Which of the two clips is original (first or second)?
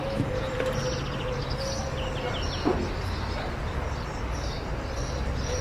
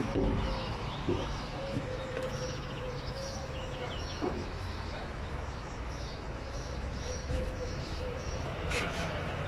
first